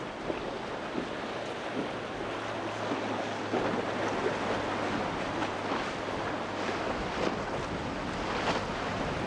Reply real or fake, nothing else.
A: real